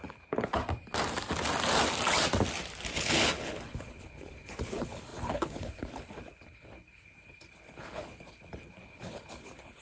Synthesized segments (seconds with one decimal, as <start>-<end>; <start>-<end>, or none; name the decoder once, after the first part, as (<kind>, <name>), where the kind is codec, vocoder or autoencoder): 0.0-0.6 (codec, HILCodec); 2.9-9.8